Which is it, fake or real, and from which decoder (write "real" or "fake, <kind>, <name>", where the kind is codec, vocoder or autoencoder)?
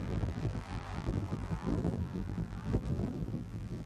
fake, vocoder, BigVGAN v2